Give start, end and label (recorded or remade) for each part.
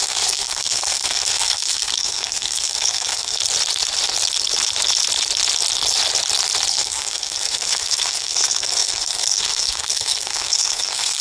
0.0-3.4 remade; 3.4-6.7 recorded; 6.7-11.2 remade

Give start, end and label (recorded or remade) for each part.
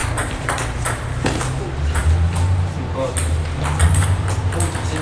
0.0-1.4 remade; 1.4-5.0 recorded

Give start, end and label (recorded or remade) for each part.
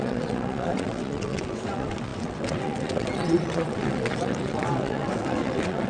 0.0-5.9 remade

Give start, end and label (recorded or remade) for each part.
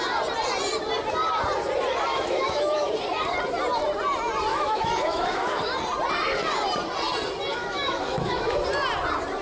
0.0-2.1 recorded; 2.1-2.9 remade; 2.9-4.5 recorded; 4.5-5.6 remade; 5.6-7.5 recorded; 7.5-8.6 remade; 8.6-9.4 recorded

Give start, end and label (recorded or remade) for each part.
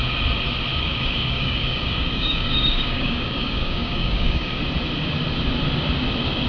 0.0-0.7 recorded; 0.7-4.6 remade; 4.6-6.5 recorded